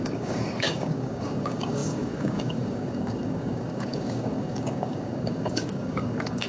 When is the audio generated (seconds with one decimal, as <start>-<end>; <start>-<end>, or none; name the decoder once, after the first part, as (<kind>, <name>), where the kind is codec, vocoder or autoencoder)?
0.0-6.5 (codec, DAC)